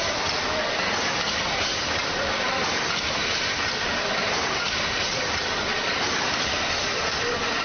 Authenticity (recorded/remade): remade